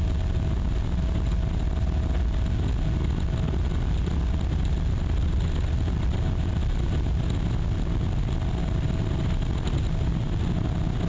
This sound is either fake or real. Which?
real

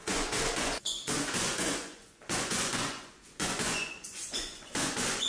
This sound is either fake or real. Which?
fake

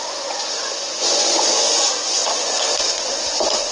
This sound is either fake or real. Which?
fake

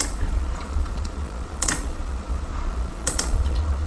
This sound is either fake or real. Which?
fake